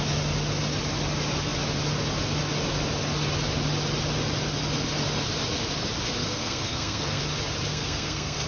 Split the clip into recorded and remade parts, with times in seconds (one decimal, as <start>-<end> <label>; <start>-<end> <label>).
0.0-6.2 recorded; 6.2-7.2 remade; 7.2-7.7 recorded; 7.7-8.5 remade